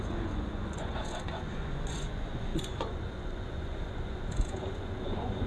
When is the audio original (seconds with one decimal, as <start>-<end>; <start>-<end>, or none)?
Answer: none